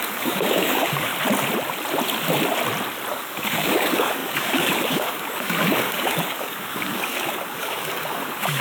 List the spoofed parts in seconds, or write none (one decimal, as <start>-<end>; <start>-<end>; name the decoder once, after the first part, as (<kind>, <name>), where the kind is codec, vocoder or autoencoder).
0.0-1.1 (codec, DAC); 3.1-8.6